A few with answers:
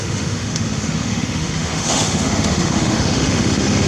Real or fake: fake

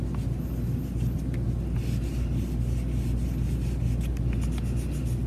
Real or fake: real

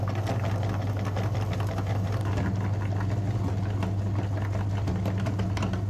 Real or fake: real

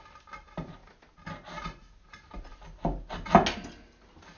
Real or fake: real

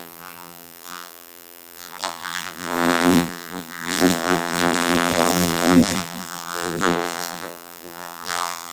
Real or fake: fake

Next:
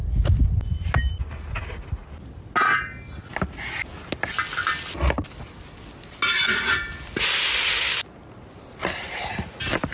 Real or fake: real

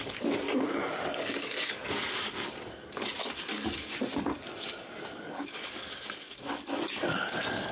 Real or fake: fake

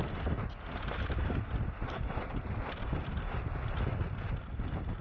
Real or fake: real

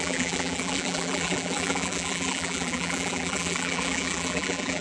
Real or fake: fake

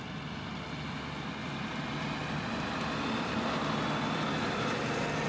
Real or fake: real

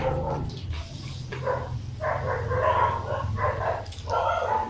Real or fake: real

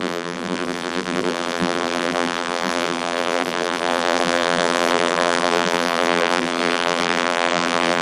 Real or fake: fake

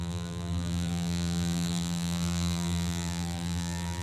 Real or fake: fake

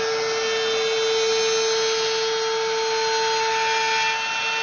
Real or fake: real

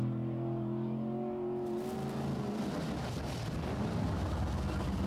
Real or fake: real